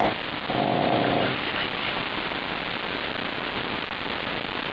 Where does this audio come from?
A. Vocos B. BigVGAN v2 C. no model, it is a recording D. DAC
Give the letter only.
C